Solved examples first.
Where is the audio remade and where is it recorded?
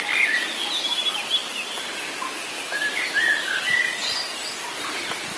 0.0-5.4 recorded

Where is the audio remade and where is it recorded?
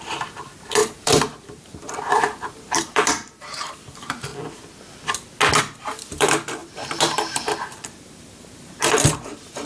0.0-4.3 remade; 4.3-5.6 recorded; 5.6-9.7 remade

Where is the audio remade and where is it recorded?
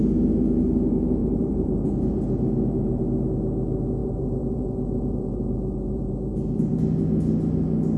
0.0-1.2 recorded; 1.2-3.0 remade; 3.0-4.0 recorded; 4.0-6.7 remade; 6.7-8.0 recorded